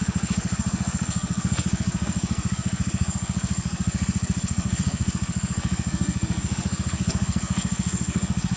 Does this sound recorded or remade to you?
remade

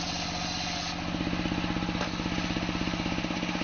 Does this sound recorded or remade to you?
recorded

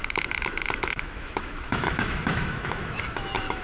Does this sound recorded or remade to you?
remade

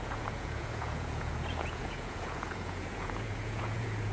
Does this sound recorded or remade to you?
remade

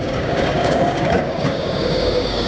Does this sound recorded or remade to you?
remade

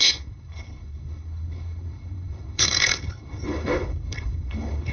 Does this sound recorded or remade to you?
remade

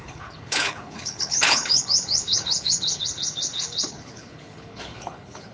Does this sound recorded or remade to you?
remade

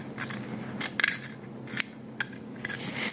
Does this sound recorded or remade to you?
recorded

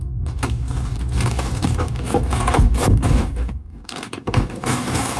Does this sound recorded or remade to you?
remade